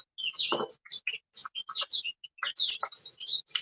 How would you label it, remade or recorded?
recorded